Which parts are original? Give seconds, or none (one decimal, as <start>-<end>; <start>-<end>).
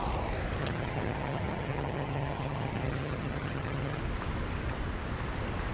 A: 0.0-0.6; 4.0-5.7